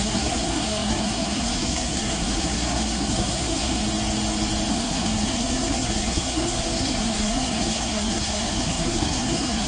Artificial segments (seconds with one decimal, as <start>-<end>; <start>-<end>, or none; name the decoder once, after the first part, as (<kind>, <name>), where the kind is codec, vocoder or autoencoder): 0.0-3.8 (codec, SNAC); 4.7-9.7